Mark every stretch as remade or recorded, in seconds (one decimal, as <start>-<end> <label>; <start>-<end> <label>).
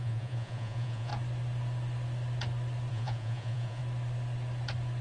0.0-1.1 remade; 1.1-2.9 recorded; 2.9-3.8 remade; 3.8-5.0 recorded